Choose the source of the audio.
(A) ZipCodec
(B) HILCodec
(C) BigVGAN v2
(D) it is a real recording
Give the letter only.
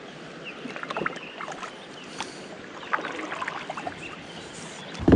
D